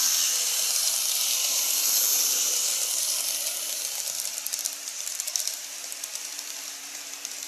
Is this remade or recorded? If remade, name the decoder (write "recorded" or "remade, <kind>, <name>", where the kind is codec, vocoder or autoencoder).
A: remade, vocoder, BigVGAN v2